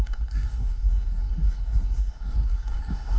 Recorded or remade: remade